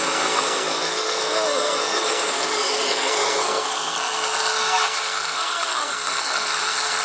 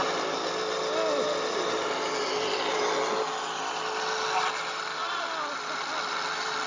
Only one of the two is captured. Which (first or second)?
second